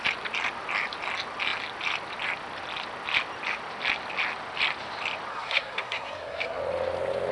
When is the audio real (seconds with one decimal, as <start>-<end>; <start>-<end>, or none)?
0.0-5.3; 6.6-7.3